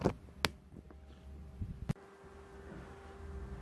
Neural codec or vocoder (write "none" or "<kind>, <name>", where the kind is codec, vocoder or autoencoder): none